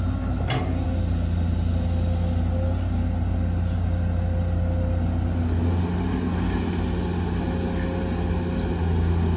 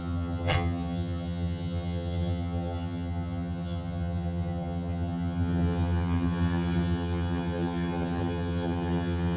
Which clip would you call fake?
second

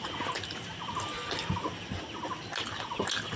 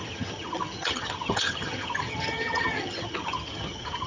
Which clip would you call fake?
second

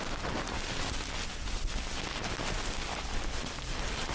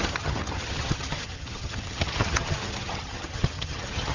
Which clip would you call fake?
second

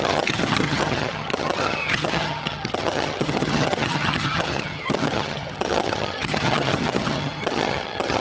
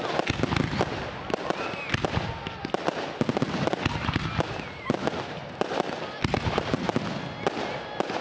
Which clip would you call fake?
first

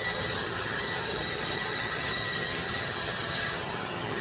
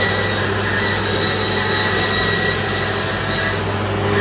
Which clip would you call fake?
first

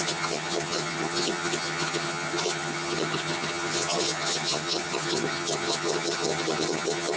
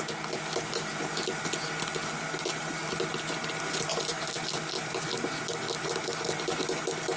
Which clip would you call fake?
first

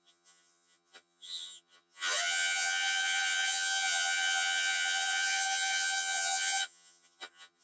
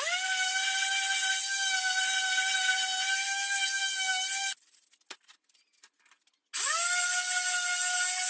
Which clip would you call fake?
first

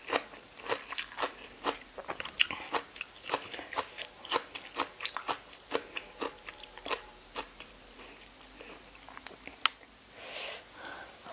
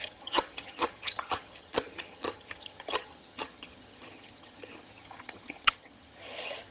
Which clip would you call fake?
second